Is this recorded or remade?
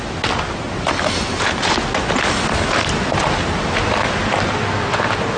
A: recorded